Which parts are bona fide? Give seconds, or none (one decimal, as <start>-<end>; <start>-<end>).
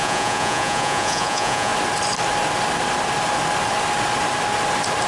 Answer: 1.7-5.1